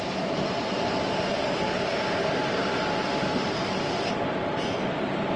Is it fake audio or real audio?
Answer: fake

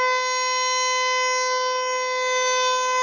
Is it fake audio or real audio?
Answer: real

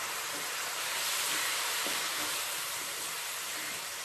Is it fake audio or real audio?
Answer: fake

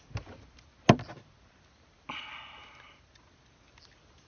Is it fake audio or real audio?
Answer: real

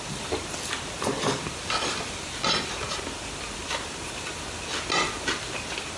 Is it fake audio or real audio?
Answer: real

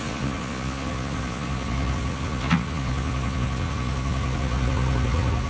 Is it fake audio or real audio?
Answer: fake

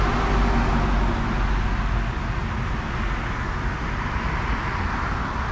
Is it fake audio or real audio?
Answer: real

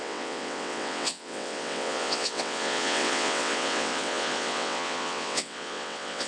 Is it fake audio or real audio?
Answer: fake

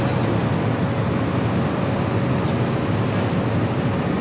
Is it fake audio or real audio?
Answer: real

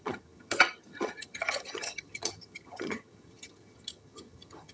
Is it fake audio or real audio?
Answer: fake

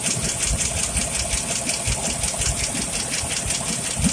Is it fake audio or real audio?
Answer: real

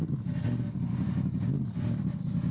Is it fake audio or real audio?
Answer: real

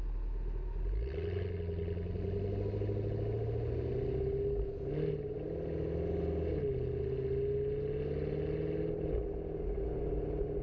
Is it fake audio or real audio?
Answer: real